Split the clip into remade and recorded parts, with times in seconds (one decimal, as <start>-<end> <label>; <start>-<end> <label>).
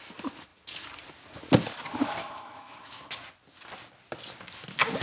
0.0-2.2 recorded; 2.2-3.0 remade; 3.0-5.0 recorded